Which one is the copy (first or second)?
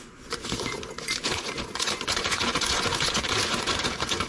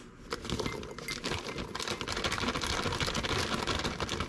first